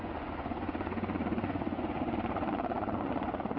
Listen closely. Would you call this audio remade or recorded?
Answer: remade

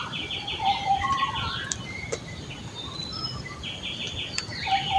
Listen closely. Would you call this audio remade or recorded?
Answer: remade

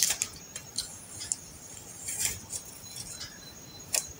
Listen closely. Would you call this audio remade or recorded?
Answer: remade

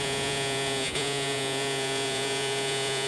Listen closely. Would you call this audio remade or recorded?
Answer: remade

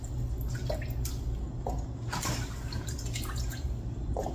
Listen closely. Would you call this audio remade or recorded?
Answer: recorded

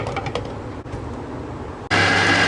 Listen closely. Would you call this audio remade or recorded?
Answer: recorded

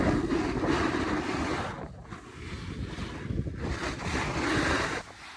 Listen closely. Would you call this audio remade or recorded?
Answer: recorded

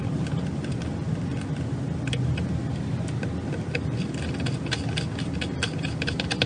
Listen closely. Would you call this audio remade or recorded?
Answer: recorded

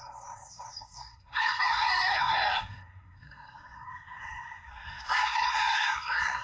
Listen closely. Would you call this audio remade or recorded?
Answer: remade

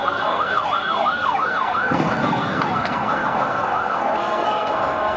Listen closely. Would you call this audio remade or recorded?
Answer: remade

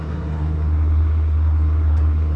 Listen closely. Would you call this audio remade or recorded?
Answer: remade